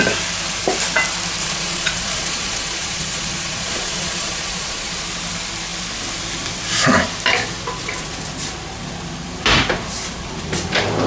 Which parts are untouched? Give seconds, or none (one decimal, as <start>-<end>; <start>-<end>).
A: 0.0-1.4; 5.0-11.1